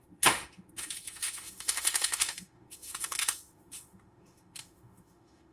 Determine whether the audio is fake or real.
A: fake